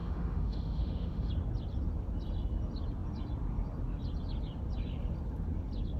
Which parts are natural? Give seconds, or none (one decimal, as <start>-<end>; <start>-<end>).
1.3-6.0